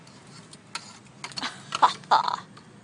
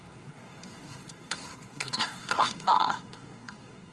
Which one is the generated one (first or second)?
second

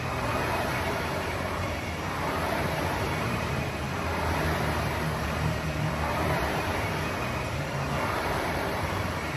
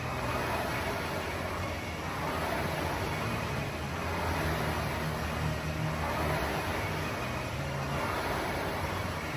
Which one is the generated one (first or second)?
first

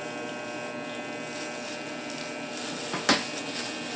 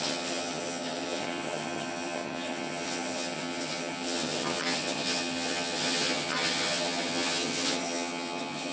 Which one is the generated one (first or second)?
second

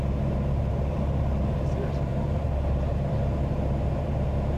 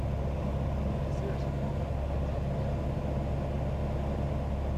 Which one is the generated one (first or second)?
first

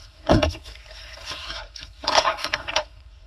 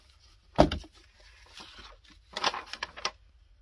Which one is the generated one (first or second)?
first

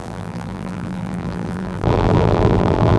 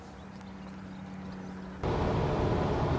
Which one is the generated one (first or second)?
first